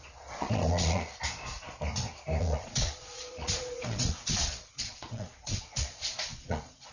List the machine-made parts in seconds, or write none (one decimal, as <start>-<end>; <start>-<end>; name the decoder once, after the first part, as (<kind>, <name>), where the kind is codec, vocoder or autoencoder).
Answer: 0.0-1.1 (vocoder, Vocos); 2.4-6.9